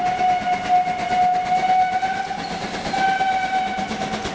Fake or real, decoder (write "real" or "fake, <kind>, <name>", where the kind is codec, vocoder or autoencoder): real